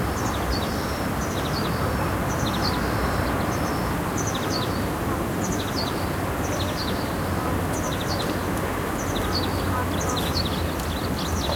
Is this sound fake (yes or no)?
no